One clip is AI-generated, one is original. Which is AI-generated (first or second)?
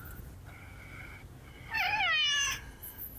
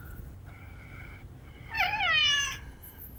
second